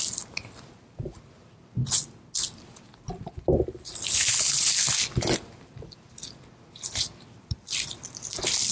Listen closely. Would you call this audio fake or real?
real